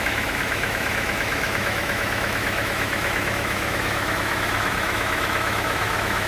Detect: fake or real fake